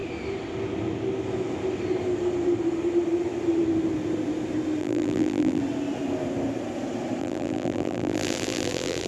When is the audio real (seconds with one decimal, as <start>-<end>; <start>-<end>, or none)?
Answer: 0.0-4.8; 5.6-7.2